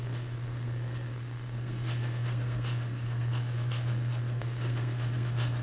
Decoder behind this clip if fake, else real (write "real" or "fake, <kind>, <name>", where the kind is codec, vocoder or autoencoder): fake, codec, SNAC